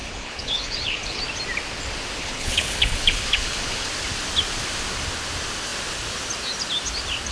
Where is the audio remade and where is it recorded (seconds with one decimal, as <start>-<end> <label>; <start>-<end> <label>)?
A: 0.0-1.2 remade; 1.2-2.2 recorded; 2.2-3.9 remade; 3.9-7.3 recorded